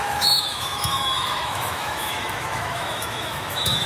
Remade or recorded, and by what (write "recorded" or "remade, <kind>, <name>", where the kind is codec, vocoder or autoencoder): remade, autoencoder, DAC-VAE